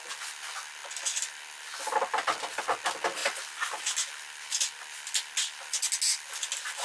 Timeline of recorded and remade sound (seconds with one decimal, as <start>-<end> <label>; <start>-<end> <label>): 0.0-6.8 recorded

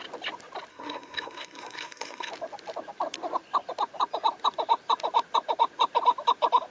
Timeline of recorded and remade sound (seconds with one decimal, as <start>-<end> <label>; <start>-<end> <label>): 0.0-0.7 recorded; 0.7-2.3 remade; 2.3-6.7 recorded

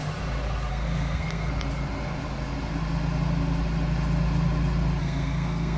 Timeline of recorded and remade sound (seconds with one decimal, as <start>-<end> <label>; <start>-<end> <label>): 0.0-0.7 recorded; 0.7-1.5 remade; 1.5-5.0 recorded; 5.0-5.8 remade

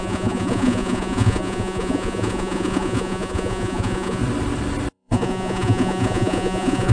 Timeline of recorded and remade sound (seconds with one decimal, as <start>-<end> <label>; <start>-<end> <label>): 0.0-4.2 remade; 4.2-4.9 recorded; 4.9-6.9 remade

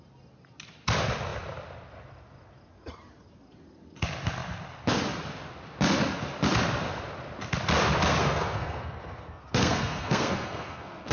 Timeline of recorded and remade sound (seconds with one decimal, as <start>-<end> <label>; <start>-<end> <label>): 0.0-8.1 recorded; 8.1-11.1 remade

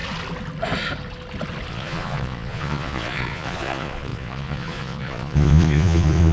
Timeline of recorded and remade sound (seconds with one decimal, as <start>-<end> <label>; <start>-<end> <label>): 0.0-1.7 recorded; 1.7-6.3 remade